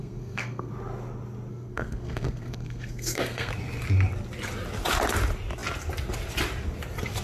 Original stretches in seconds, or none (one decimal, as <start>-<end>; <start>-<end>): 0.7-1.5; 3.5-7.2

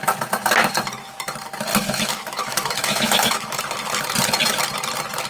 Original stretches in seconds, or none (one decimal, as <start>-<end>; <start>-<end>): 0.0-1.7; 3.6-5.3

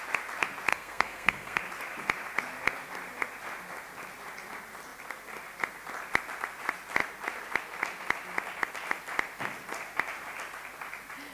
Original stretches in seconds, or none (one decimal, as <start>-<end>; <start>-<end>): 0.0-0.7; 1.6-11.3